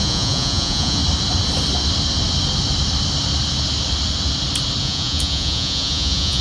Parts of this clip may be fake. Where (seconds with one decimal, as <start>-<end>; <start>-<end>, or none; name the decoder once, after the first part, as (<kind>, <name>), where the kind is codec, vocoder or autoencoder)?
0.0-1.0 (vocoder, Vocos); 4.8-6.4